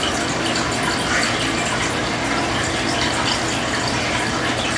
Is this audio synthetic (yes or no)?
no